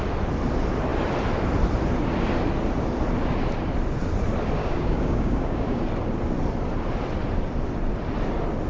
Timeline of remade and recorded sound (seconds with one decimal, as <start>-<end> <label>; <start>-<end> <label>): 0.0-4.6 recorded; 4.6-5.8 remade; 5.8-8.7 recorded